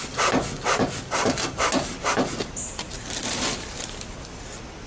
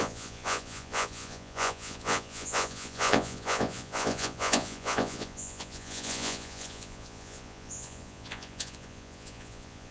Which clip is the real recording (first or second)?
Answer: first